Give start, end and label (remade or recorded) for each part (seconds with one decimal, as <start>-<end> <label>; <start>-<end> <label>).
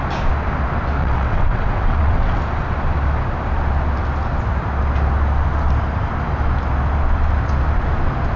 0.0-1.0 recorded; 1.0-2.4 remade; 2.4-8.4 recorded